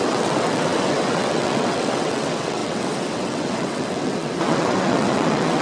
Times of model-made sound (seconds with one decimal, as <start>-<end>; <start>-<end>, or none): 0.0-5.6